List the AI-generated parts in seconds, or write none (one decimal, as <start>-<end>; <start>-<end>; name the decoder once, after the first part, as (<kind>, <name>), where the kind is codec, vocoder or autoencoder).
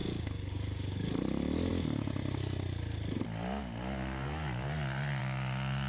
0.0-1.1 (codec, DAC)